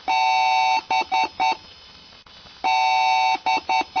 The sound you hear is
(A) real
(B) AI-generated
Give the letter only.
A